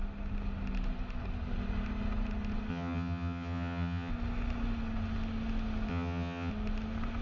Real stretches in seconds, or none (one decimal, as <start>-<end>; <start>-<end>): 0.0-2.7; 4.1-5.9; 6.5-7.2